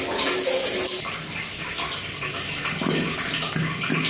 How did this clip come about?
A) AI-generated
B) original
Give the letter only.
B